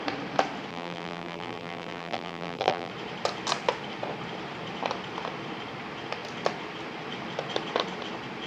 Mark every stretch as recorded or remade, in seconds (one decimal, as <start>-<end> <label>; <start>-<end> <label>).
0.0-0.7 recorded; 0.7-2.9 remade; 2.9-8.5 recorded